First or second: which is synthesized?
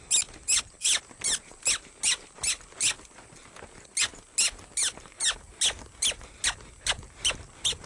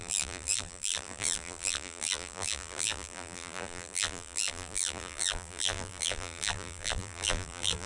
second